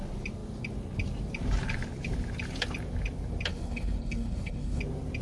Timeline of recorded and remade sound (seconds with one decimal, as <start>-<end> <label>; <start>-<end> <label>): 0.0-3.5 recorded; 3.5-4.8 remade; 4.8-5.2 recorded